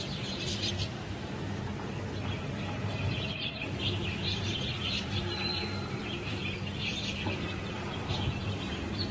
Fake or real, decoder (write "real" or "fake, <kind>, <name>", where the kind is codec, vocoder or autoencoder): fake, vocoder, BigVGAN v2